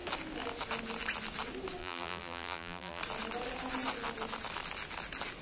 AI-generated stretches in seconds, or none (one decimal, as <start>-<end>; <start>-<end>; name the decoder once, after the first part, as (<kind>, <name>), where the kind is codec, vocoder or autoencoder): 1.8-3.0 (vocoder, BigVGAN v2)